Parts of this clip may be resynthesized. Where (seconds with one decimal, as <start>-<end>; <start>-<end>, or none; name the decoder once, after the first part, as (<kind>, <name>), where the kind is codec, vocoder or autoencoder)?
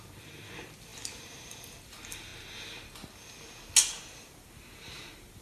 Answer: 0.0-2.3 (vocoder, BigVGAN v2); 4.0-5.4